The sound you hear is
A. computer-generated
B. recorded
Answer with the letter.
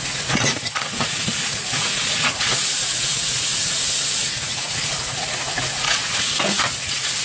A